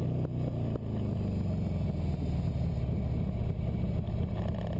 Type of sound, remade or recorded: recorded